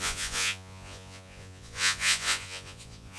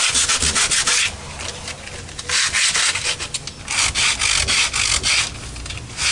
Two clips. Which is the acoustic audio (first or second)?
second